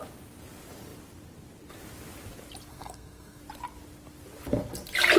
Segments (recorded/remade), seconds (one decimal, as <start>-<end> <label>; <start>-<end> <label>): 0.0-2.7 recorded; 2.7-3.4 remade; 3.4-5.2 recorded